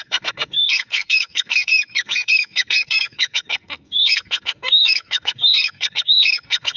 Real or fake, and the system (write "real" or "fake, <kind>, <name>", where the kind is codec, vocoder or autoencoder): fake, codec, SNAC